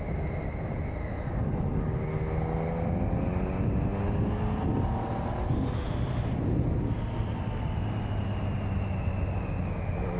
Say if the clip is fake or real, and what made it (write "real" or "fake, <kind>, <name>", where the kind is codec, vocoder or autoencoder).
real